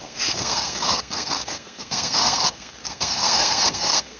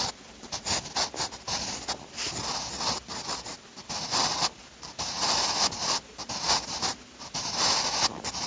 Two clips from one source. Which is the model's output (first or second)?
first